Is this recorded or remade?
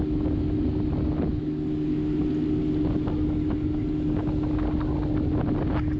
recorded